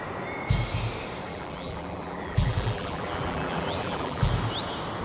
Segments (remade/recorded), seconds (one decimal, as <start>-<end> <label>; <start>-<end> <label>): 0.0-1.3 recorded; 1.3-4.3 remade; 4.3-5.0 recorded